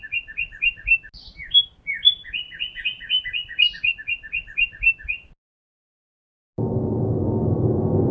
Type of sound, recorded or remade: recorded